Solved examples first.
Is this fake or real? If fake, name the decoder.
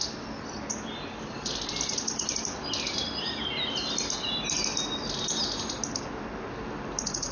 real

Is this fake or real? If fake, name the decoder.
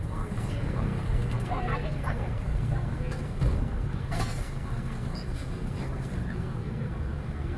fake, codec, SNAC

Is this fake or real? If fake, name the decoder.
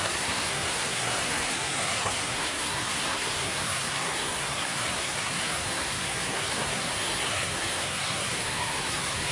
fake, codec, SNAC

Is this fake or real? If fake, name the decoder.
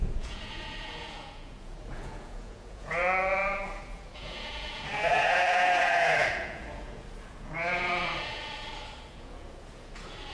fake, vocoder, Vocos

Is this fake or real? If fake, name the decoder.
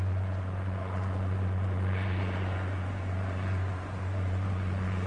fake, vocoder, Vocos